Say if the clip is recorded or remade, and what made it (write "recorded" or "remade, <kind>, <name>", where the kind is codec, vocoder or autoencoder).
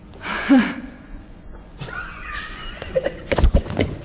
remade, vocoder, Vocos